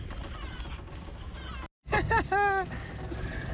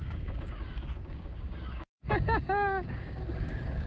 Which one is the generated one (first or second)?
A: second